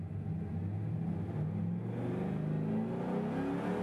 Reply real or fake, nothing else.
real